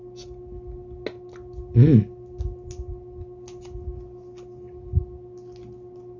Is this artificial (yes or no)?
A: no